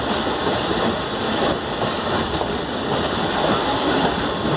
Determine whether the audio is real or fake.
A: fake